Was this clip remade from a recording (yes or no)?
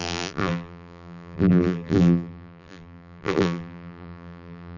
yes